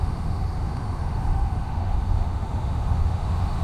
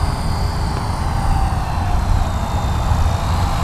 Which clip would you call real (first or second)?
second